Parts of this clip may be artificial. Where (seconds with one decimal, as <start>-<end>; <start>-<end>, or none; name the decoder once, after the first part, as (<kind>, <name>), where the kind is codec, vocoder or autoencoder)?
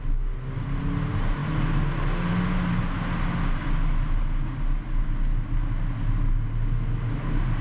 none